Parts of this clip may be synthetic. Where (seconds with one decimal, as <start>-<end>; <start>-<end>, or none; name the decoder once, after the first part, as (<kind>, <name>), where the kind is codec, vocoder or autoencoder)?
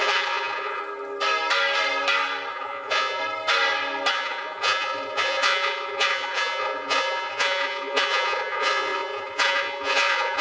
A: 0.0-0.8 (vocoder, Vocos); 2.5-3.2; 4.1-10.4